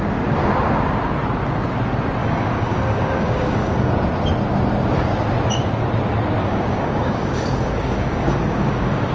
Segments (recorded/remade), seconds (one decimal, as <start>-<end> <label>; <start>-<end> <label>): 0.0-2.2 recorded; 2.2-3.9 remade; 3.9-6.4 recorded; 6.4-9.1 remade